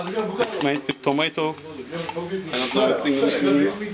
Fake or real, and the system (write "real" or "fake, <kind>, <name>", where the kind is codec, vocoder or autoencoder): real